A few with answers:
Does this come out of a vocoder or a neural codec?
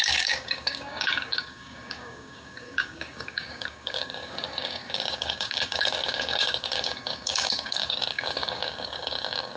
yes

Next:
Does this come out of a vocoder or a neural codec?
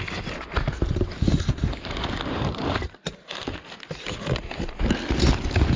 no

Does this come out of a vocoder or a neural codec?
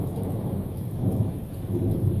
yes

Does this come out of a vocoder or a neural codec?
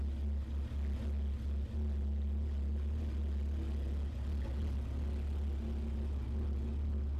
no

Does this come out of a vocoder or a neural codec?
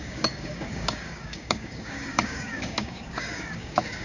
yes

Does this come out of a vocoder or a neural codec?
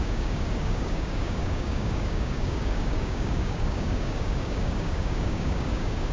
yes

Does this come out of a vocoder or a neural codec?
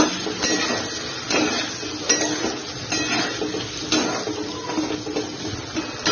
no